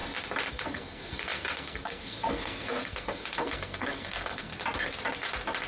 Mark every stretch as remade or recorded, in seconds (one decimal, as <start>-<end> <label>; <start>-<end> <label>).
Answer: 0.0-0.5 recorded; 0.5-4.5 remade; 4.5-5.7 recorded

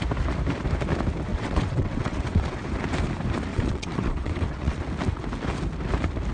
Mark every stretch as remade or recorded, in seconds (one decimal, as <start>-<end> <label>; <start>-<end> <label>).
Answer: 0.0-1.3 recorded; 1.3-2.6 remade; 2.6-3.5 recorded; 3.5-4.8 remade; 4.8-6.3 recorded

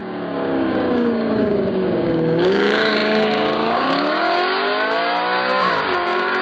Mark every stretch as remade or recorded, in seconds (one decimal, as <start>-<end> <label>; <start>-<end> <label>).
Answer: 0.0-6.4 remade

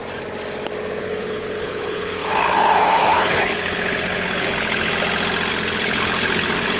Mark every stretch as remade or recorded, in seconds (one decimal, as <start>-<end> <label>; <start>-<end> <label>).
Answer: 0.0-1.0 recorded; 1.0-4.9 remade; 4.9-5.5 recorded; 5.5-6.8 remade